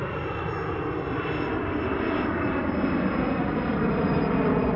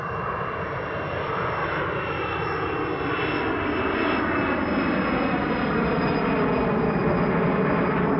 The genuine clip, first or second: second